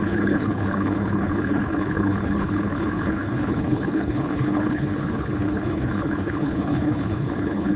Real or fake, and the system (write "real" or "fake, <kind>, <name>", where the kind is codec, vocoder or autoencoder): fake, codec, HILCodec